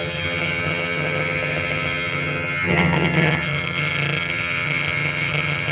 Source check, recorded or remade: remade